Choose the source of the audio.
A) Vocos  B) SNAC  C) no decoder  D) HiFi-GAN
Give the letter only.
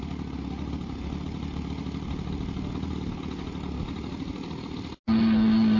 C